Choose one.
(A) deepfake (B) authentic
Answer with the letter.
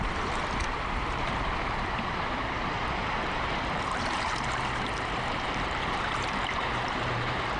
A